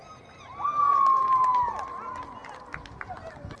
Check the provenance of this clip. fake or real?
real